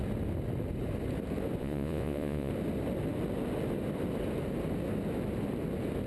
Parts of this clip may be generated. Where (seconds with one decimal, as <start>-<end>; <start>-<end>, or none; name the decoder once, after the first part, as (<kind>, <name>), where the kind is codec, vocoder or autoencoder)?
1.6-2.5 (vocoder, Vocos)